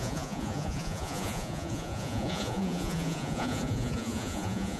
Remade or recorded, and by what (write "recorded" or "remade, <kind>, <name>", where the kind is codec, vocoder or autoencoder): remade, vocoder, Vocos